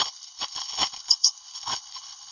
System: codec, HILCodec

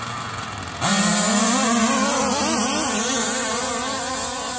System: none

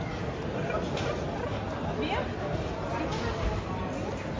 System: none